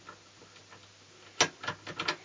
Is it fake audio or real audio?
real